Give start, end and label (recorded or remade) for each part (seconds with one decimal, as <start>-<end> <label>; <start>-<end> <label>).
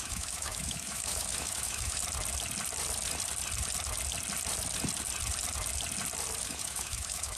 0.0-2.0 remade; 2.0-6.4 recorded; 6.4-7.4 remade